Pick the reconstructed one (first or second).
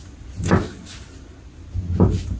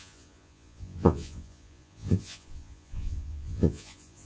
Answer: second